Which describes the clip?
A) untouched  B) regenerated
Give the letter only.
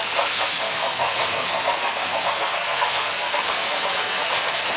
B